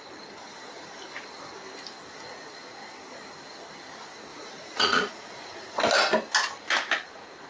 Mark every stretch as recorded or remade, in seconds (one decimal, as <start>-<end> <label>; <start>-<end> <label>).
0.0-4.3 recorded; 4.3-5.8 remade; 5.8-7.5 recorded